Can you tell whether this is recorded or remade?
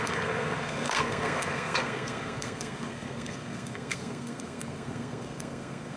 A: remade